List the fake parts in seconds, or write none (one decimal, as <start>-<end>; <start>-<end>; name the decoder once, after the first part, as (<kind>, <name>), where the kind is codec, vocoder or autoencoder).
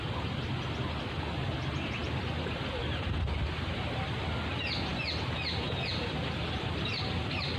none